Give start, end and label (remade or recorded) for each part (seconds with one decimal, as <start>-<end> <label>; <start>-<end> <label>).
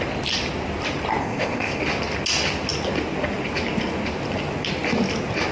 0.0-1.2 recorded; 1.2-1.8 remade; 1.8-5.5 recorded